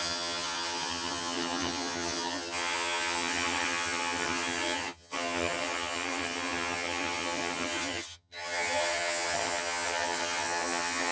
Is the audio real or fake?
fake